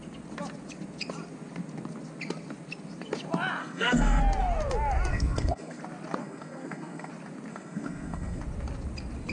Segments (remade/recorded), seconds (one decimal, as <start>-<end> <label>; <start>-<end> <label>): 0.0-3.6 recorded; 3.6-4.2 remade; 4.2-5.1 recorded; 5.1-5.8 remade; 5.8-6.2 recorded; 6.2-7.1 remade; 7.1-7.5 recorded; 7.5-8.4 remade; 8.4-9.3 recorded